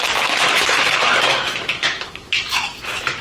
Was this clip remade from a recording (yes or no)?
yes